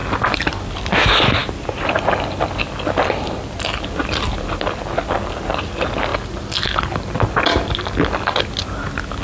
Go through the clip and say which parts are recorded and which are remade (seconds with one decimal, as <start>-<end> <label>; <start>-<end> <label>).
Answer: 0.0-6.1 recorded; 6.1-7.1 remade; 7.1-9.2 recorded